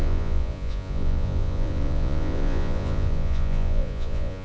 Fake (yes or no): yes